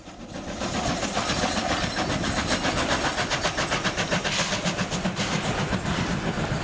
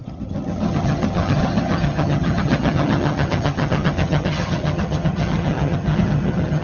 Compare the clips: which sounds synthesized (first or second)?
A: second